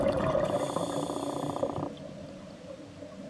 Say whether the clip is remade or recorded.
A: recorded